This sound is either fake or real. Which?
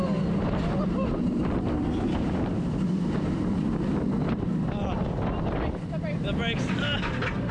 real